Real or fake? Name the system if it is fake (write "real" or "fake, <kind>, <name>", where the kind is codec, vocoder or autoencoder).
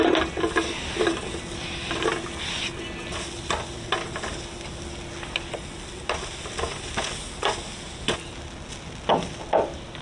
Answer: real